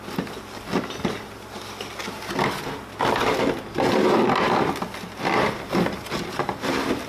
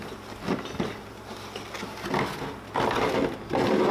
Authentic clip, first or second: second